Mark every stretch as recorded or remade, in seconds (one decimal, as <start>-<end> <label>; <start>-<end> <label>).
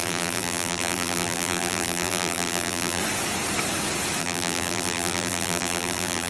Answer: 0.0-3.0 remade; 3.0-4.2 recorded; 4.2-6.3 remade